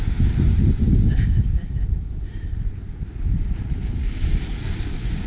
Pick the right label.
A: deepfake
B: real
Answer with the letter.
B